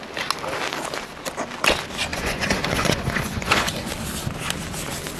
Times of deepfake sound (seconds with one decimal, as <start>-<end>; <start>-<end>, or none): 2.1-3.9